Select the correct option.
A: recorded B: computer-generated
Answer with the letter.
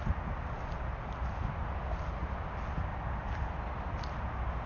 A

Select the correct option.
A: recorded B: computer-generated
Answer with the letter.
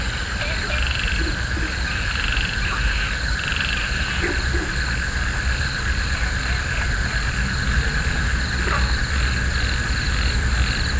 A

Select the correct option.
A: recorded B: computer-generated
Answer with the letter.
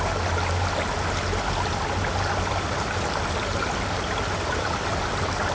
A